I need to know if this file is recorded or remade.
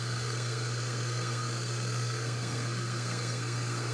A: remade